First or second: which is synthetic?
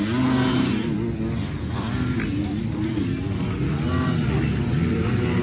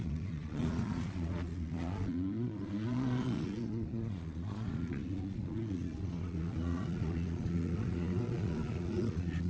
second